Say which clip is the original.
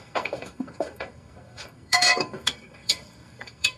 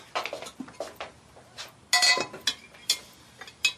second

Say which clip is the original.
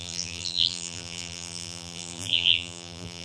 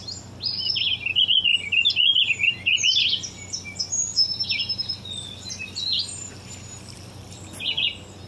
second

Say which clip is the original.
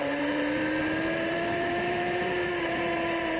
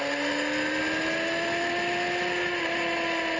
second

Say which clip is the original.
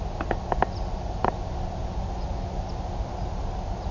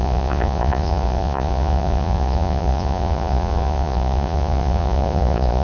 first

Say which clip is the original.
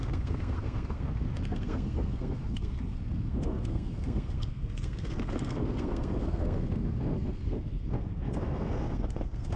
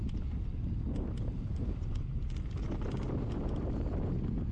second